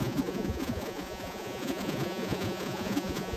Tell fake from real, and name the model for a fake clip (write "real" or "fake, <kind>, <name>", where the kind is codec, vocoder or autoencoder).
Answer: fake, vocoder, Vocos